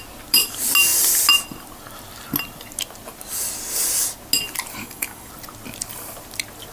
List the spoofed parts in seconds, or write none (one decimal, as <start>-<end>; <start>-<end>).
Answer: 4.8-5.3

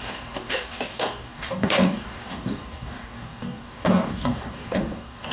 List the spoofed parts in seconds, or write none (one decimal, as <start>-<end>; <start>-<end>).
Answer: 0.0-5.3

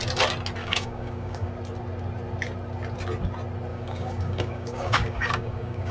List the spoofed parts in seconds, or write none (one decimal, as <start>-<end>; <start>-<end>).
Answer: 0.6-1.5; 3.7-5.9

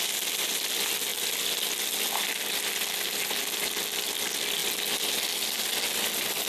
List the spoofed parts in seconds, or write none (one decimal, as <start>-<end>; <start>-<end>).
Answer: none

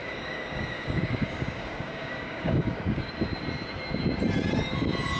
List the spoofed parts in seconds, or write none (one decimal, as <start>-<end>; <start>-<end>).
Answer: 0.0-3.1